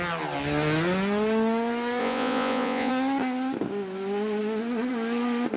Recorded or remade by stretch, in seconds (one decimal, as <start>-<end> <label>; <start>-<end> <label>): 0.0-2.0 recorded; 2.0-2.9 remade; 2.9-5.6 recorded